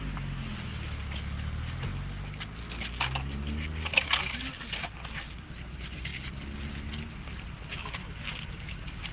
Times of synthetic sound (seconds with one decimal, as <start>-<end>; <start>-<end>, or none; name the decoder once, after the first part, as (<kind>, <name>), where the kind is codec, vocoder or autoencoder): none